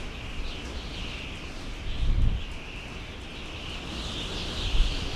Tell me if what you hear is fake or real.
real